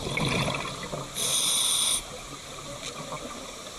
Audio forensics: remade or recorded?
recorded